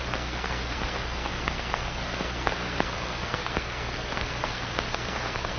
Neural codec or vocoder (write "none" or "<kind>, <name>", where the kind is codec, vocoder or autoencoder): codec, SNAC